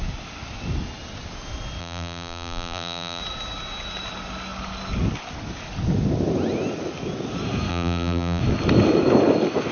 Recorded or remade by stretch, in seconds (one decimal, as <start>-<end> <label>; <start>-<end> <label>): 0.0-1.8 recorded; 1.8-3.2 remade; 3.2-7.7 recorded; 7.7-8.4 remade; 8.4-9.7 recorded